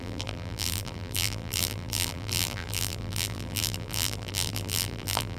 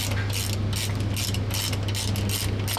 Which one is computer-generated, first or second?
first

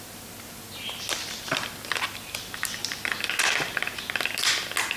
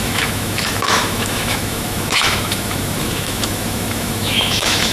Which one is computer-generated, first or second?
second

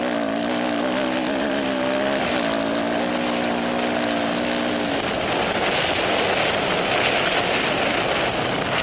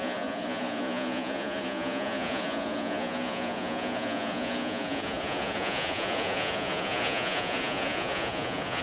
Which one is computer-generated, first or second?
second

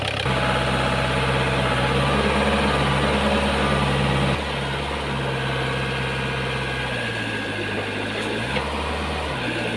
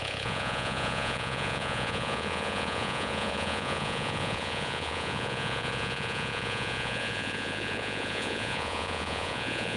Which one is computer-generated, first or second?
second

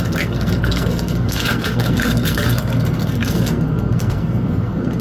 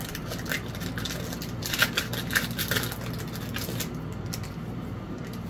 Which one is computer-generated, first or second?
first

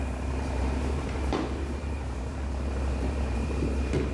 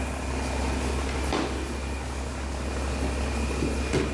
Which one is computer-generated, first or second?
first